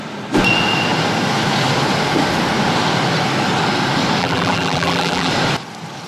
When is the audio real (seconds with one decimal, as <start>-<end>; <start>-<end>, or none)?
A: 0.0-4.2; 5.3-6.1